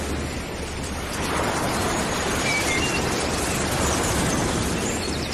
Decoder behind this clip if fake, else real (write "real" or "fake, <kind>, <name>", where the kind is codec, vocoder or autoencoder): fake, vocoder, BigVGAN v2